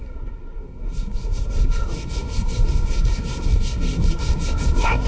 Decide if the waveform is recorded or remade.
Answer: remade